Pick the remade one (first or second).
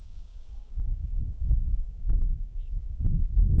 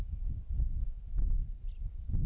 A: first